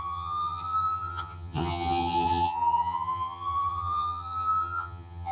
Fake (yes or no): yes